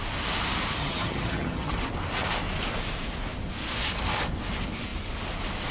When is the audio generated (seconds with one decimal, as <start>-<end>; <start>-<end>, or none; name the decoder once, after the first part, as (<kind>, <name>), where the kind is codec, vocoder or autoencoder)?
0.8-1.7 (vocoder, HiFi-GAN)